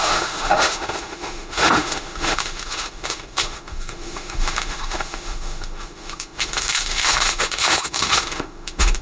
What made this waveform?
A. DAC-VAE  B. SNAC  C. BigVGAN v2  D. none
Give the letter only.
A